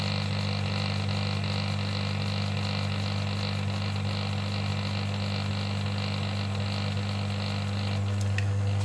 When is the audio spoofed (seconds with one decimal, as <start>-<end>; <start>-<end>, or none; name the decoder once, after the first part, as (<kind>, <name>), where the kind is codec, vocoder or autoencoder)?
none